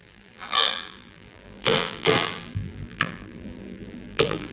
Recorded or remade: remade